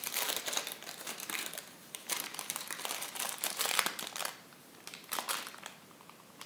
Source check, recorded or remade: remade